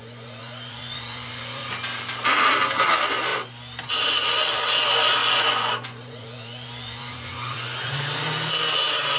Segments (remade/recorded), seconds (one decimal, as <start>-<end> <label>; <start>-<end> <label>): 0.0-1.7 remade; 1.7-5.2 recorded; 5.2-8.0 remade; 8.0-9.2 recorded